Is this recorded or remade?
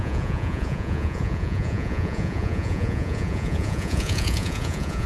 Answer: remade